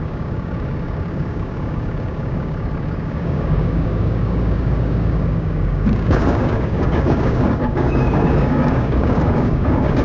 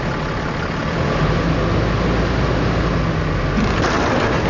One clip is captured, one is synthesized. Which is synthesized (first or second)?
first